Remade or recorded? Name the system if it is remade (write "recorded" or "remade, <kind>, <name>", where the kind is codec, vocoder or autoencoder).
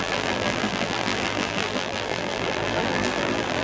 remade, vocoder, BigVGAN v2